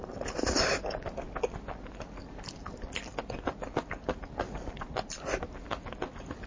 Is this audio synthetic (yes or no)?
no